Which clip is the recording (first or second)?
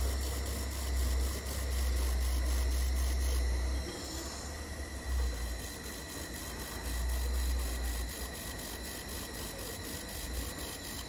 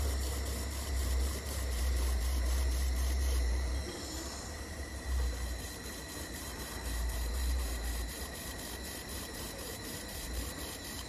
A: first